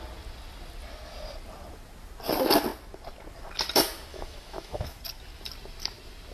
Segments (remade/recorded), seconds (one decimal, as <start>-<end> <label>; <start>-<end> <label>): 0.0-4.1 recorded; 4.1-5.0 remade; 5.0-6.3 recorded